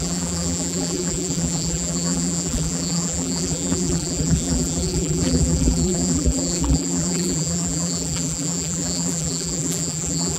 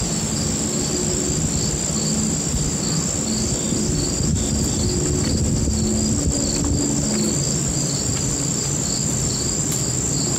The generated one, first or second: first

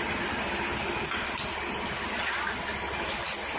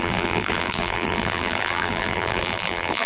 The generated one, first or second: second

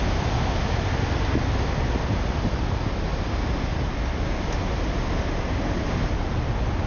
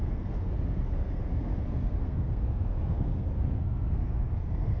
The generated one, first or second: second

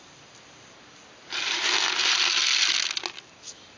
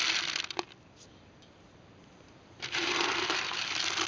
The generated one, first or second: second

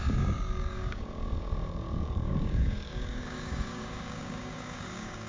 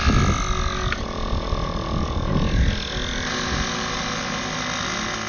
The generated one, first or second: first